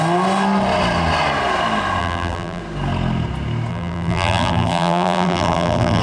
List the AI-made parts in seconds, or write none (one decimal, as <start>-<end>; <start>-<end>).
2.0-2.6; 3.7-6.0